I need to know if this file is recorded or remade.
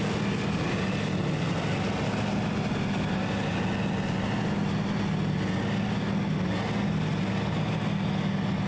recorded